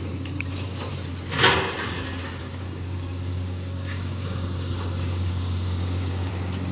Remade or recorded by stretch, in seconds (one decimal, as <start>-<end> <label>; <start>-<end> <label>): 0.0-2.4 recorded; 2.4-6.3 remade; 6.3-6.7 recorded